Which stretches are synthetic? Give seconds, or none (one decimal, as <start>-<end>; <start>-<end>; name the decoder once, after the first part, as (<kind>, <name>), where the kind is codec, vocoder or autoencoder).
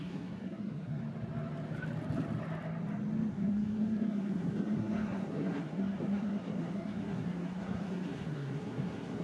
0.0-1.0 (codec, SNAC); 3.3-9.2